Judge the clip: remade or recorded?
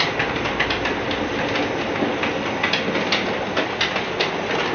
recorded